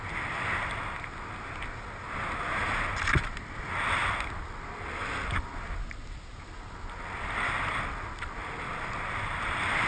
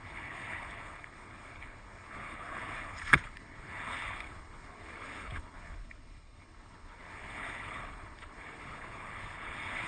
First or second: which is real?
first